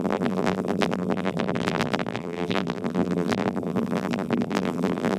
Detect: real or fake fake